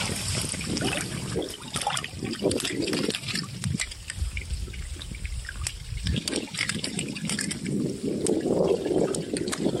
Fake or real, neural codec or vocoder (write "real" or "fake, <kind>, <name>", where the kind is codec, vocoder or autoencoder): real